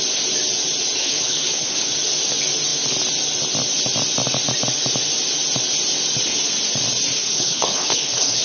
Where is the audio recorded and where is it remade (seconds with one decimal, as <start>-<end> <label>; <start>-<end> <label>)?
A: 0.0-1.0 recorded; 1.0-1.9 remade; 1.9-7.2 recorded; 7.2-8.4 remade